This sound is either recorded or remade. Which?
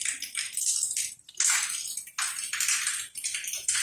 recorded